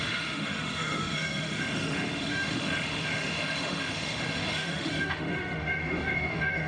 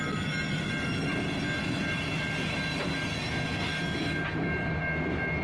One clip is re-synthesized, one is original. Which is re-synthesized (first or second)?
first